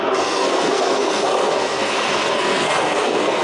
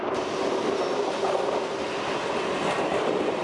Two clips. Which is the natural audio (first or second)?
second